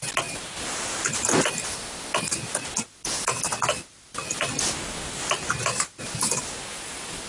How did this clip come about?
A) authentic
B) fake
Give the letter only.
A